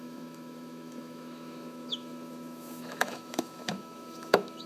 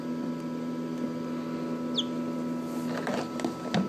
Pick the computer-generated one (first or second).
first